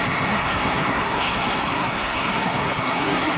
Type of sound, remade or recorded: remade